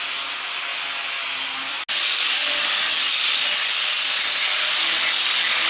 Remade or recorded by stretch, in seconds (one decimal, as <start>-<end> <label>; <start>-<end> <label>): 0.0-5.7 recorded